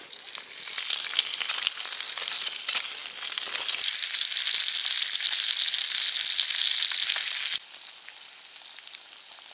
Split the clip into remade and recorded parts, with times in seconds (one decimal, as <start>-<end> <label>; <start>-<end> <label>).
0.0-9.5 recorded